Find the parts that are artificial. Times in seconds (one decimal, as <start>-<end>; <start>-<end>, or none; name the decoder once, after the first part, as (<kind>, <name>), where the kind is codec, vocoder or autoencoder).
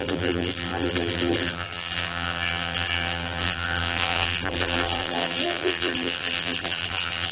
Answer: 0.0-7.3 (vocoder, BigVGAN v2)